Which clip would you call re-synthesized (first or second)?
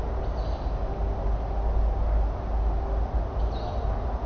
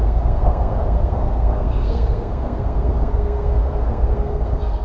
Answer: second